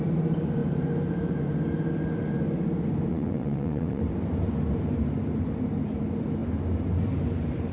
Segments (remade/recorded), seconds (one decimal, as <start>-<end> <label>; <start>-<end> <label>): 0.0-3.1 recorded; 3.1-4.0 remade; 4.0-7.7 recorded